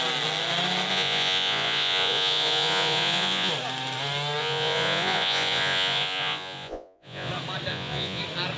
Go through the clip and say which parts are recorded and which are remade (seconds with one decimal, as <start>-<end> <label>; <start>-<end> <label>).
0.0-0.9 recorded; 0.9-3.5 remade; 3.5-4.4 recorded; 4.4-7.3 remade; 7.3-7.7 recorded; 7.7-8.2 remade; 8.2-8.6 recorded